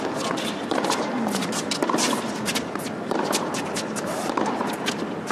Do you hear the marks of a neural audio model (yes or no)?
no